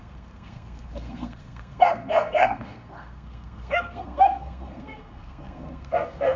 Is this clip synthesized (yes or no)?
yes